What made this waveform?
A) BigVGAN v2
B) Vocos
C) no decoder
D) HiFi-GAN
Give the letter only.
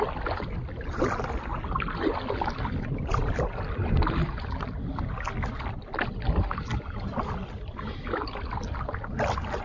C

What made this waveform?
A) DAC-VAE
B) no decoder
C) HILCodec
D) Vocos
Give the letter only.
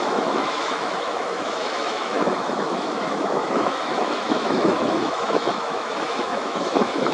A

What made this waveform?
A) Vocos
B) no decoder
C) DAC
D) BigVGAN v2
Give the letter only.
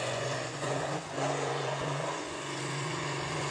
A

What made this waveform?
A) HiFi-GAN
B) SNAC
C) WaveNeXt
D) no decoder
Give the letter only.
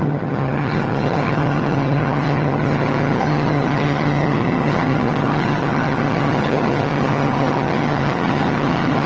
A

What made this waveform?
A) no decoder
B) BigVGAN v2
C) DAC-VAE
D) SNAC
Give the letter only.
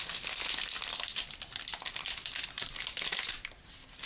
A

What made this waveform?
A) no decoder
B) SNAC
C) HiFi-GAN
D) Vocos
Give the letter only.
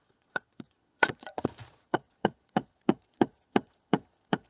D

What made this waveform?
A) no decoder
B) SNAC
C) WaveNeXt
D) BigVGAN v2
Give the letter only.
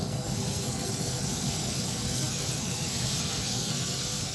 B